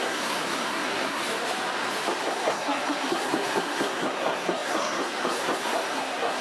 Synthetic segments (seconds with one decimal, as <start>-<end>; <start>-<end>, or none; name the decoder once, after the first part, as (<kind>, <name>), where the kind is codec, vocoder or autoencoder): 0.0-1.2 (codec, SNAC); 2.2-6.4